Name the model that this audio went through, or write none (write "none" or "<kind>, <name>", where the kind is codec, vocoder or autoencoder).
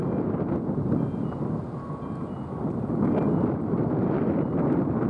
none